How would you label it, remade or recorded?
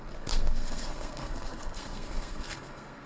remade